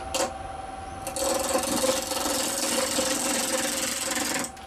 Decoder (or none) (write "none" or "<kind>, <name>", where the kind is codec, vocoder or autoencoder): none